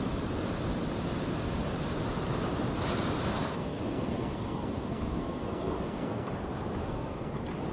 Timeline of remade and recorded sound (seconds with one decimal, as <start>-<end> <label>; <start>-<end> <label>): 0.0-3.4 recorded; 3.4-6.3 remade; 6.3-6.8 recorded; 6.8-7.3 remade; 7.3-7.7 recorded